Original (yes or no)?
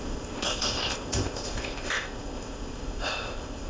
no